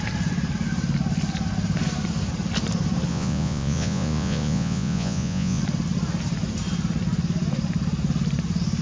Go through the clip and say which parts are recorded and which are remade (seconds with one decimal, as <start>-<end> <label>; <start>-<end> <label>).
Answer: 0.0-3.1 recorded; 3.1-5.6 remade; 5.6-8.8 recorded